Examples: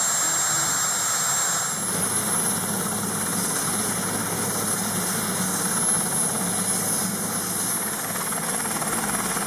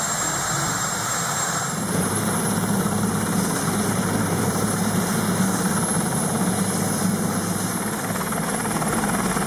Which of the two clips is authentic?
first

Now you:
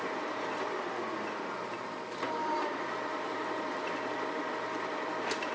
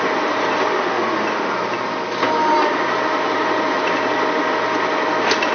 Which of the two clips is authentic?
second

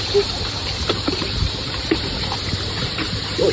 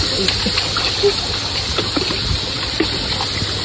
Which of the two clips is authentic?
second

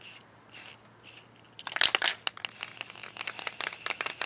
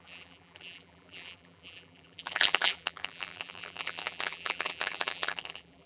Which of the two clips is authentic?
first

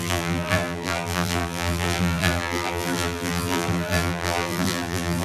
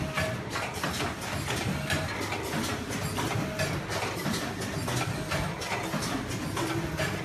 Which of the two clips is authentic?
second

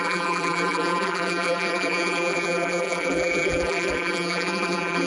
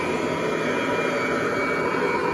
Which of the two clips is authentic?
second